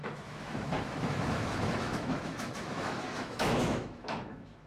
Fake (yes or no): yes